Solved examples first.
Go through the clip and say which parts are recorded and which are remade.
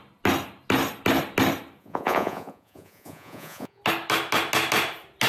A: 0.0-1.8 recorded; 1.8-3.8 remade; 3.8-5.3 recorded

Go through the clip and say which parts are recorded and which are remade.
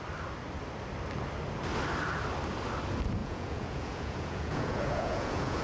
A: 0.0-3.2 recorded; 3.2-5.6 remade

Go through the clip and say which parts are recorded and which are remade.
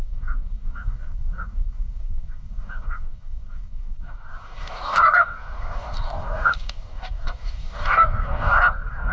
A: 0.0-9.1 remade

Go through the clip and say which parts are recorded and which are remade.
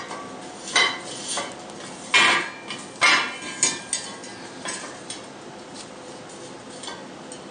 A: 0.0-4.3 recorded; 4.3-5.5 remade; 5.5-7.5 recorded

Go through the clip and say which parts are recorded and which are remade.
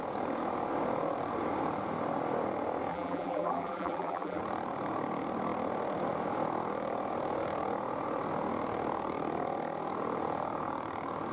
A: 0.0-2.9 recorded; 2.9-4.4 remade; 4.4-11.3 recorded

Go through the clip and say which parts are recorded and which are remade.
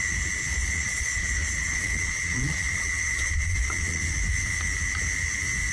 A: 0.0-0.6 recorded; 0.6-4.0 remade; 4.0-5.7 recorded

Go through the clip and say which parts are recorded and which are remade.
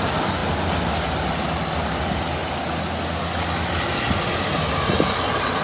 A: 0.0-5.6 recorded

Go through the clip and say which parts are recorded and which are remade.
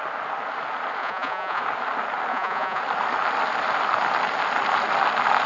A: 0.0-1.0 recorded; 1.0-1.6 remade; 1.6-2.3 recorded; 2.3-2.8 remade; 2.8-5.5 recorded